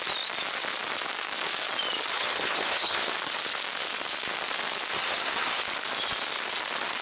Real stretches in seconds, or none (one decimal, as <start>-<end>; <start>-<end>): 0.0-2.1; 3.1-4.9; 5.6-7.0